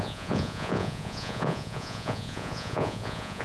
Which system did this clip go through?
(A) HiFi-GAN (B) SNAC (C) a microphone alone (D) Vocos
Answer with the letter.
D